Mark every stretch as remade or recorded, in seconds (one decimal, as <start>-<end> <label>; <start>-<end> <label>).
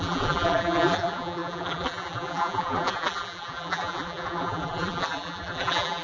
0.0-6.0 remade